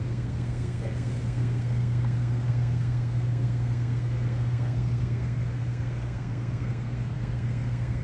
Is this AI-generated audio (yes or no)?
yes